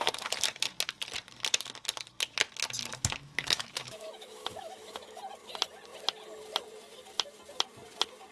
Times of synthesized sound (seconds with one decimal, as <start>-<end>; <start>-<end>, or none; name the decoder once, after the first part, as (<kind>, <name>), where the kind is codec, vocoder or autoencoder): 2.9-5.2 (autoencoder, DAC-VAE)